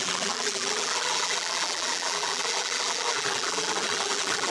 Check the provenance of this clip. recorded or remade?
remade